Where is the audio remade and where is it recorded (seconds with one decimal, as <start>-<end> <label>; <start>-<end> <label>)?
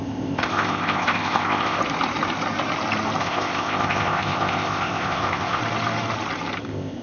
0.0-1.8 remade; 1.8-3.2 recorded; 3.2-5.6 remade; 5.6-6.6 recorded; 6.6-7.0 remade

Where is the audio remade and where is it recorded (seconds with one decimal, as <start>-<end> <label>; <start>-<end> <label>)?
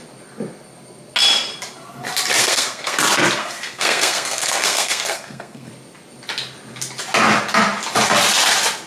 0.0-2.4 recorded; 2.4-3.0 remade; 3.0-3.4 recorded; 3.4-5.7 remade; 5.7-8.9 recorded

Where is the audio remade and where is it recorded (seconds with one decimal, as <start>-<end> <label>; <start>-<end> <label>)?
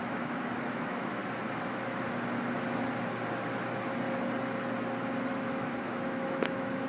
0.0-1.2 remade; 1.2-5.3 recorded; 5.3-6.9 remade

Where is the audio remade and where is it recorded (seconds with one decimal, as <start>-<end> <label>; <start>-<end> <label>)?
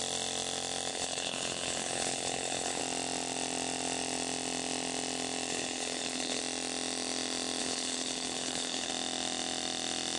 0.0-0.9 recorded; 0.9-2.8 remade; 2.8-5.5 recorded; 5.5-6.4 remade; 6.4-7.6 recorded; 7.6-8.9 remade; 8.9-10.2 recorded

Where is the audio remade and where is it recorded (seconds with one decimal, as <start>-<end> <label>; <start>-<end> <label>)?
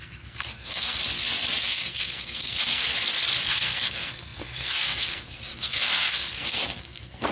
0.0-1.0 remade; 1.0-1.6 recorded; 1.6-2.9 remade; 2.9-3.5 recorded; 3.5-7.3 remade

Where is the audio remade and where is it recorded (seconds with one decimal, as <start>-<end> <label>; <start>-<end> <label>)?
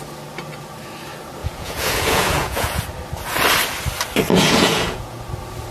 0.0-1.4 recorded; 1.4-2.8 remade; 2.8-4.3 recorded; 4.3-5.2 remade; 5.2-5.7 recorded